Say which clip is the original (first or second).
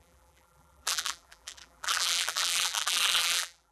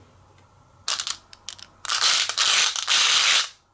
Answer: second